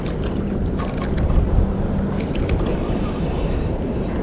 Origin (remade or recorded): recorded